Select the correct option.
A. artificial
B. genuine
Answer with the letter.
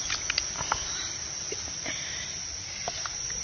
B